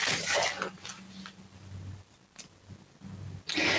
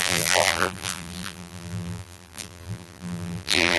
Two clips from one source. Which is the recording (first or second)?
first